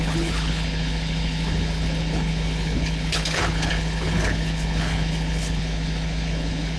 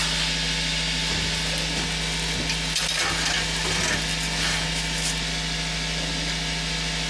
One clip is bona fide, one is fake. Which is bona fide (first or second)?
second